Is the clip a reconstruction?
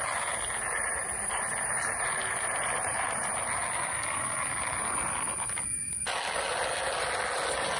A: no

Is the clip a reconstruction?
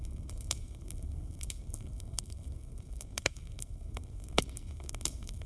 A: yes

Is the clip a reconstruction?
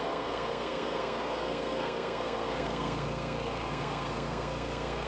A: yes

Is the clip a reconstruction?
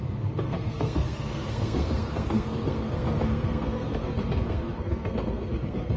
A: yes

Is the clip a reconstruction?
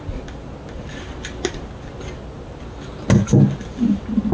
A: no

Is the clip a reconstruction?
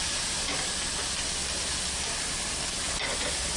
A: no